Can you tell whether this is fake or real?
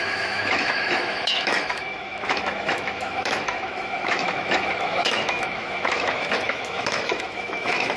fake